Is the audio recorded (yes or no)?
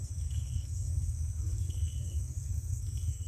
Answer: no